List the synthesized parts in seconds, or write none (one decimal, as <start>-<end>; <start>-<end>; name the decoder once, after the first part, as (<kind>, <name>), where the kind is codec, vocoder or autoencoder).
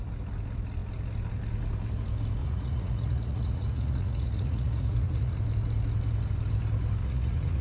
2.4-5.4 (vocoder, Vocos); 7.0-7.6